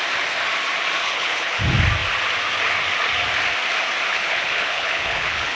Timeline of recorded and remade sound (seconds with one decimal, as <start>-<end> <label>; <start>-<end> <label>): 0.0-1.0 recorded; 1.0-1.6 remade; 1.6-4.1 recorded; 4.1-5.6 remade